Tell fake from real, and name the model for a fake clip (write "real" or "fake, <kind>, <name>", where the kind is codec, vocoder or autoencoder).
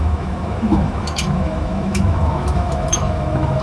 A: fake, autoencoder, DAC-VAE